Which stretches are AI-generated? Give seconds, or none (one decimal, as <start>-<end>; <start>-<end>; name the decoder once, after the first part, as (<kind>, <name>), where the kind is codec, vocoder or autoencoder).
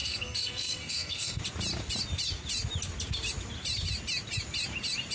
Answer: 0.0-1.4 (codec, SNAC)